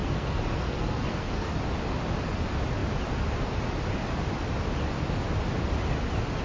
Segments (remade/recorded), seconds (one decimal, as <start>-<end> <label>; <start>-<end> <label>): 0.0-1.5 remade; 1.5-6.4 recorded